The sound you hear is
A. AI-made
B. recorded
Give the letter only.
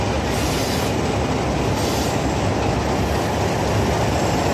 B